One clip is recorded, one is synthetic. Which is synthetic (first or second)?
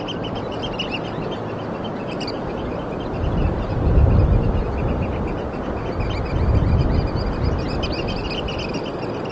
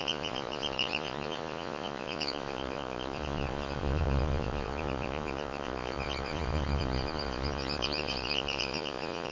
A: second